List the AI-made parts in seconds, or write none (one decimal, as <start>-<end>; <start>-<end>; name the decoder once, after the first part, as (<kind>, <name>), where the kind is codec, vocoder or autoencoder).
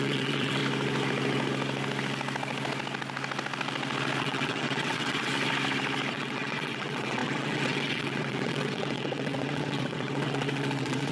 0.0-0.6 (vocoder, WaveNeXt); 4.2-5.3; 6.1-11.1